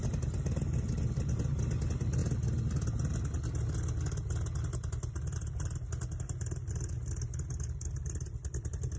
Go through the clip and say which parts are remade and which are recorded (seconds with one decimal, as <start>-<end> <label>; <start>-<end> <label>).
0.0-9.0 recorded